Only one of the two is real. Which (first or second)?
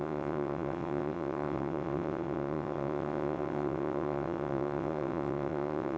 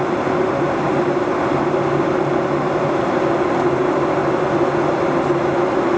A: second